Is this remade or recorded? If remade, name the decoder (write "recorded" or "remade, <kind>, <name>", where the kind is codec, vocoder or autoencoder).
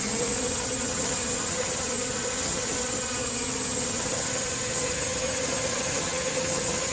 remade, vocoder, HiFi-GAN